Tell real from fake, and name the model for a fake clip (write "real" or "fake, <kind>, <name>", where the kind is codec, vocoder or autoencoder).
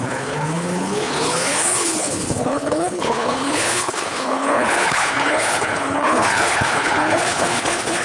fake, codec, HILCodec